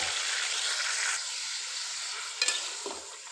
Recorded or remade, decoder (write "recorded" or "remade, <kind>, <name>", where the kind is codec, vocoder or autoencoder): recorded